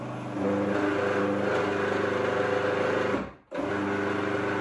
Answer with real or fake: real